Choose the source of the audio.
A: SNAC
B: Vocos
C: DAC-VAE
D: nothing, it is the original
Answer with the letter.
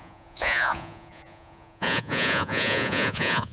B